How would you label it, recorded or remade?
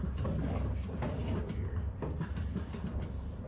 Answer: recorded